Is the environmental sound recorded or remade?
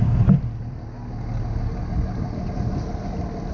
remade